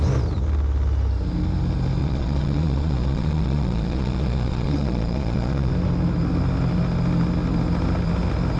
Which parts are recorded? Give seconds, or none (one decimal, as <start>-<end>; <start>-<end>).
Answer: 0.0-2.0; 5.7-8.6